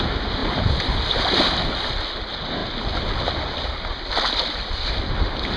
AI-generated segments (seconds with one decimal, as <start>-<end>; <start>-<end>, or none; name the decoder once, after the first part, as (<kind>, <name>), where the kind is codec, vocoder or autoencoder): none